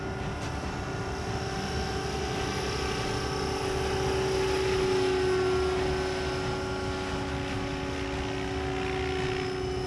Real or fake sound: real